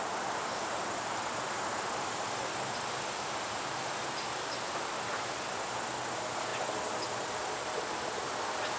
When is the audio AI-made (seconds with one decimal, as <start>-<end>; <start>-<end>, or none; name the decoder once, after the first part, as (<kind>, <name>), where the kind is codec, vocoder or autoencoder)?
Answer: none